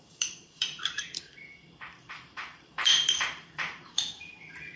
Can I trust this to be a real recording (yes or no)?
no